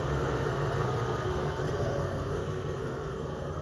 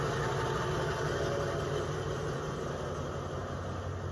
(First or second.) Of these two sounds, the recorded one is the second